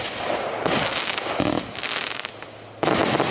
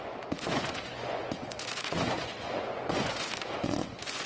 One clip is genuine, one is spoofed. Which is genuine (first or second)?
first